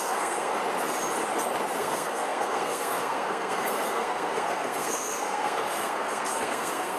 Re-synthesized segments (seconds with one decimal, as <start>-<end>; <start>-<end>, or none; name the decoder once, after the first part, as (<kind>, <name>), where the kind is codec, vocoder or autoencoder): 0.0-0.6 (codec, SNAC); 1.8-7.0